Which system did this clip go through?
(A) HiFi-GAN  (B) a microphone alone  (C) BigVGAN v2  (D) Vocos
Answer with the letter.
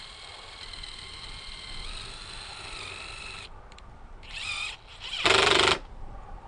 C